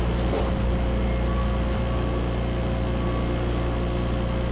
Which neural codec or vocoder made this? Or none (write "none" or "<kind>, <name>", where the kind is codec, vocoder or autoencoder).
none